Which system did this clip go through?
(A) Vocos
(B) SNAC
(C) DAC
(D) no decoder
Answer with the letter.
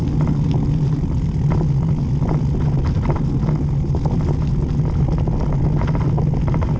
D